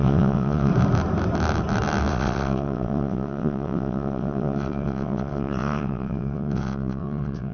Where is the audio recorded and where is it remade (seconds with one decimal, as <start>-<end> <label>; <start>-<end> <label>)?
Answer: 0.0-0.7 remade; 0.7-2.1 recorded; 2.1-7.5 remade